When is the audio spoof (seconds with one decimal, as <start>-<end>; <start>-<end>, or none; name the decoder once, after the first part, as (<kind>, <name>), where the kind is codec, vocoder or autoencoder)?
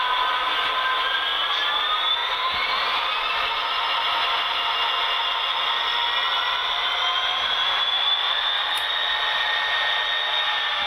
2.2-3.6 (vocoder, BigVGAN v2)